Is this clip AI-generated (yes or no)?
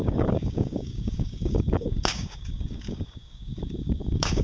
yes